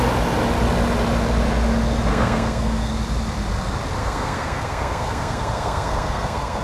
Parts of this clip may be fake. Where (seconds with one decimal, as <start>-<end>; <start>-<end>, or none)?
2.1-2.9; 4.0-6.6